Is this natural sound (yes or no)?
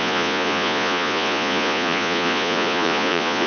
no